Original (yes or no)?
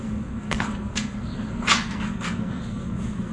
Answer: no